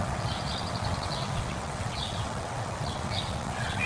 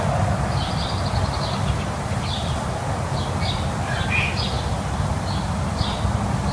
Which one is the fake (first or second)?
first